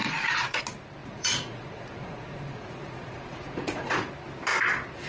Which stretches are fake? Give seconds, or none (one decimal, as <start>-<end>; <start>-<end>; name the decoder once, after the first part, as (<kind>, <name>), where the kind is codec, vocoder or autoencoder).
0.0-0.6 (vocoder, Vocos); 1.0-4.1

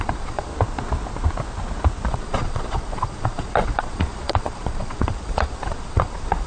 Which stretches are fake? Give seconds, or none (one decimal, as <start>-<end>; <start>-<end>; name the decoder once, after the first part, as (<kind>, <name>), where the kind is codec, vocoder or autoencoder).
0.0-0.5 (vocoder, Vocos); 2.1-6.5

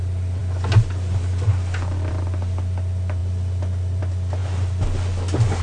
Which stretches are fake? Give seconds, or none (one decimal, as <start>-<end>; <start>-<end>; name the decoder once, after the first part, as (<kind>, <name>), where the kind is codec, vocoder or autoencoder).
none

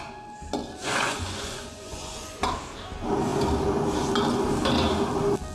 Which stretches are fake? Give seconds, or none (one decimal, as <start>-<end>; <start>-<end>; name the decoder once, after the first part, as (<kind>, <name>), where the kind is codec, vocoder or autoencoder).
0.8-2.4 (vocoder, Vocos)

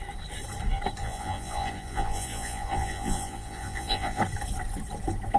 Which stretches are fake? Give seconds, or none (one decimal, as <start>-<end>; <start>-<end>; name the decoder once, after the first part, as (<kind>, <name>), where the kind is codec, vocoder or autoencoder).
1.0-4.2 (vocoder, Vocos)

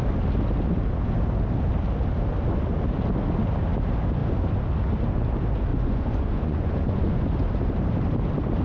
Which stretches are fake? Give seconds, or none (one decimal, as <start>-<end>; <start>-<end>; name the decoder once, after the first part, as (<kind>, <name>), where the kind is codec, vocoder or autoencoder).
5.7-7.5 (vocoder, Vocos)

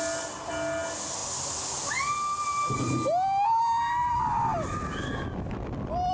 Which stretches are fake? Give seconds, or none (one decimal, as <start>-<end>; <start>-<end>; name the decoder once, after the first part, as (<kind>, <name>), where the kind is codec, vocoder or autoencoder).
none